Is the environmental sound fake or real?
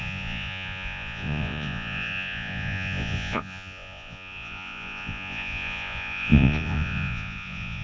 fake